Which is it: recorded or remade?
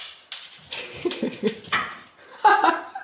recorded